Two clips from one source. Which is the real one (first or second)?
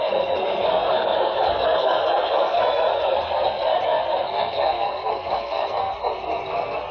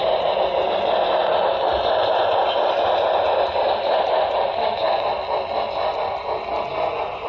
second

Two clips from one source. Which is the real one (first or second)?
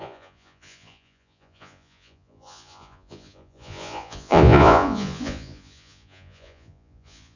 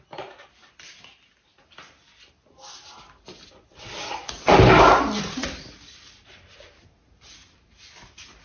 second